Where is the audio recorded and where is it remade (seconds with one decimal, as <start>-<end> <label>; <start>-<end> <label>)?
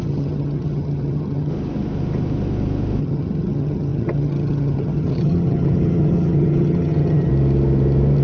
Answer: 0.0-1.5 remade; 1.5-3.0 recorded; 3.0-7.3 remade; 7.3-8.2 recorded